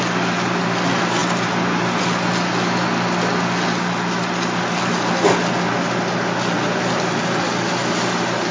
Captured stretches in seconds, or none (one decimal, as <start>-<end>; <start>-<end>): 0.0-8.5

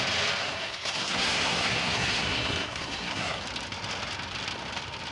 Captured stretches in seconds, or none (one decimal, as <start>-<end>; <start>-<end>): 0.0-0.4; 3.4-5.1